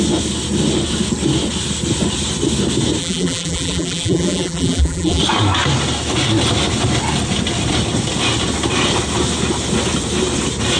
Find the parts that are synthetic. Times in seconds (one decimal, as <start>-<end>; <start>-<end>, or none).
3.0-5.2